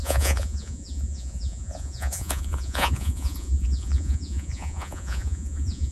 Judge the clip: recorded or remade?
remade